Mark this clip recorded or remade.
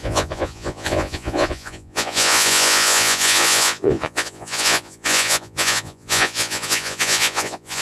remade